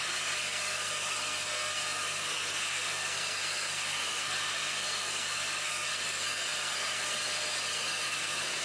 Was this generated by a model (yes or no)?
yes